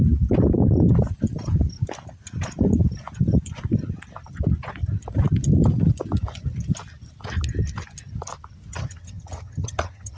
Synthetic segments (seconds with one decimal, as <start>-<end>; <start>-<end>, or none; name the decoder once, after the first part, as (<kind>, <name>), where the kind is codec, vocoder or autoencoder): 8.7-10.2 (vocoder, HiFi-GAN)